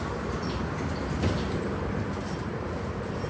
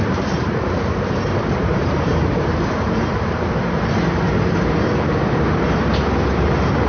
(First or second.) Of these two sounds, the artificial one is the second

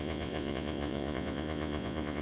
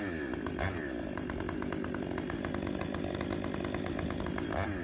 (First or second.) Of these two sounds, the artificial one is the first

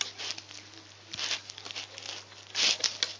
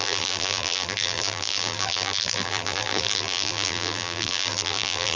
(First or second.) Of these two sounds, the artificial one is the second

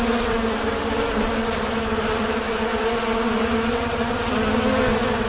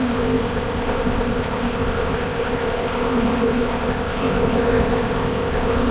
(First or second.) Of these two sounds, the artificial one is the second